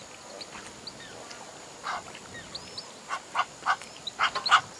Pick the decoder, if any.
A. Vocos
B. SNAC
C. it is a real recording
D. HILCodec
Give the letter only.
C